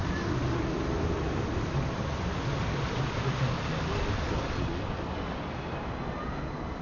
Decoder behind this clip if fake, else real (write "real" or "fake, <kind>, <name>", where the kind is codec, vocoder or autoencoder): real